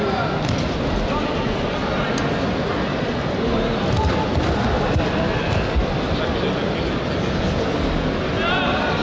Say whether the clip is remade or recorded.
recorded